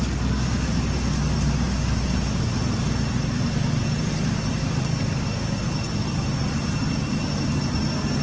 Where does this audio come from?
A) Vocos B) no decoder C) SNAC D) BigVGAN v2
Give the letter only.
B